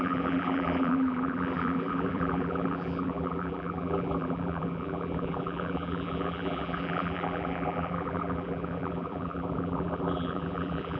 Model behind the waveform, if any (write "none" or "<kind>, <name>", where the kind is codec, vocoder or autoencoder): vocoder, BigVGAN v2